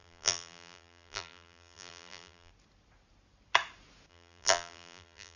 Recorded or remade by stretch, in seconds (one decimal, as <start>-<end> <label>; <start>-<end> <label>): 0.0-2.5 remade; 2.5-4.1 recorded; 4.1-5.4 remade